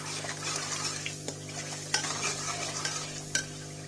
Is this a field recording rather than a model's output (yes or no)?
yes